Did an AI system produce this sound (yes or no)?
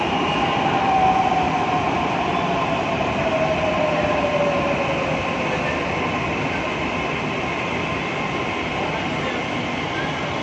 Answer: no